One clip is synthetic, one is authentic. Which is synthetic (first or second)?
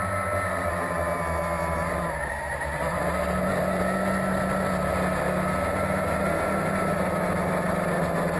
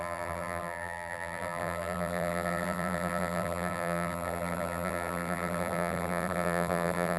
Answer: second